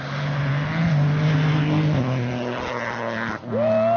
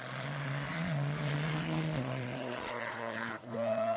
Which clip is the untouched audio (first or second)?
first